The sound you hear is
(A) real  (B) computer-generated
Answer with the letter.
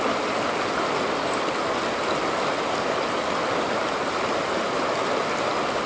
A